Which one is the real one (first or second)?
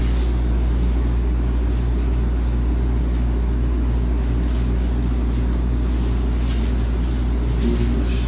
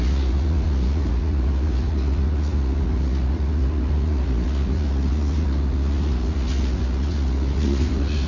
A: first